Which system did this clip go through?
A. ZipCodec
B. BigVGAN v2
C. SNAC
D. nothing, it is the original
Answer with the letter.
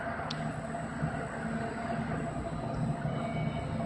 D